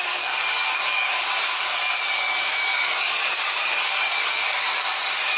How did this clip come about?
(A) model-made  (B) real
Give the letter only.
A